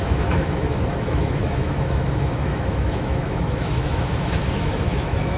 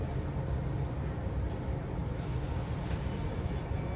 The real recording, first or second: second